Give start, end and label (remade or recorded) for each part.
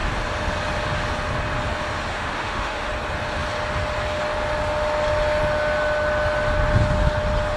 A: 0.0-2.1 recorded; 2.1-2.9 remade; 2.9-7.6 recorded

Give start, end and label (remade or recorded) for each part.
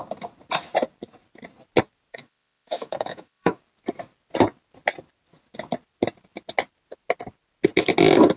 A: 0.0-2.1 recorded; 2.1-3.6 remade; 3.6-8.4 recorded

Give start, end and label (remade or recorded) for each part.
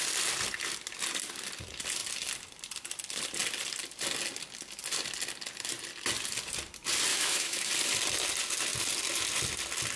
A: 0.0-7.1 recorded; 7.1-7.7 remade; 7.7-10.0 recorded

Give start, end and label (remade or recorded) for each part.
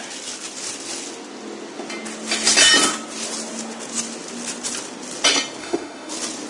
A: 0.0-5.6 recorded; 5.6-6.1 remade; 6.1-6.5 recorded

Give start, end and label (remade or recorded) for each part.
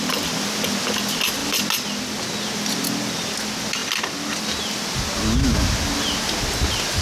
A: 0.0-7.0 recorded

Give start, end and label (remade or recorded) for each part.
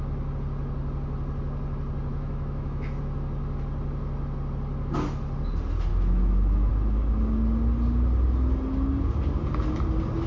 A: 0.0-2.1 recorded; 2.1-3.0 remade; 3.0-5.9 recorded; 5.9-6.7 remade; 6.7-10.3 recorded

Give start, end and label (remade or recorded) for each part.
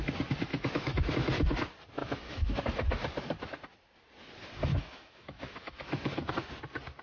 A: 0.0-0.5 recorded; 0.5-1.1 remade; 1.1-2.0 recorded; 2.0-2.6 remade; 2.6-4.7 recorded; 4.7-6.3 remade; 6.3-7.0 recorded